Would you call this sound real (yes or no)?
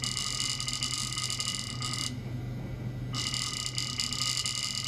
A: yes